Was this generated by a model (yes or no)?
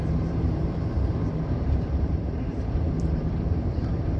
yes